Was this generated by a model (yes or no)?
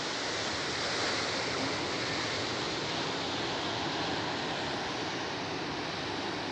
no